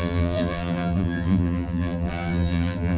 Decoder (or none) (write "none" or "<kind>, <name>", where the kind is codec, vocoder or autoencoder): vocoder, BigVGAN v2